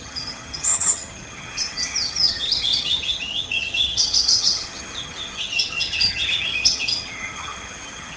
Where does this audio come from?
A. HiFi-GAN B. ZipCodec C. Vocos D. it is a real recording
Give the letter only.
A